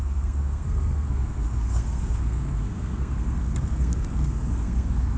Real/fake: fake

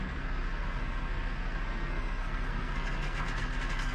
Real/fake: fake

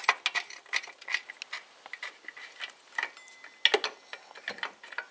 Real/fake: real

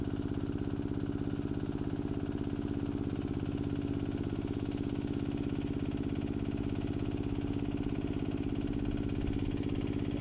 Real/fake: real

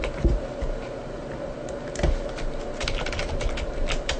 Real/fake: real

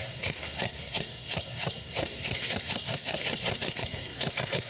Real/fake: fake